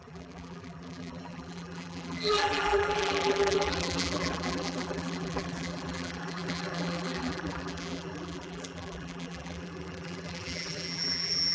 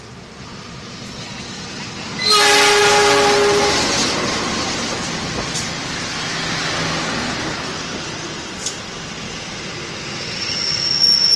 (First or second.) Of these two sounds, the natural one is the second